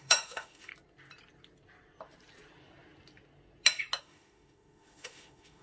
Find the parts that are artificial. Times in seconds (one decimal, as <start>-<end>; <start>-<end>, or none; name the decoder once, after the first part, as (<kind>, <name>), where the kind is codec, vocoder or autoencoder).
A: 0.0-0.7 (autoencoder, DAC-VAE); 4.0-5.6